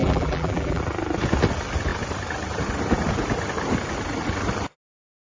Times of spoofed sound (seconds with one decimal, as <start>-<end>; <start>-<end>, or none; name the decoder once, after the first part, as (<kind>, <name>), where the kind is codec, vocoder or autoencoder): 0.0-0.8 (vocoder, BigVGAN v2)